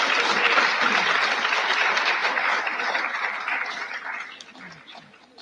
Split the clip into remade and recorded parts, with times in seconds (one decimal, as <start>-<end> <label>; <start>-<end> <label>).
0.0-5.4 recorded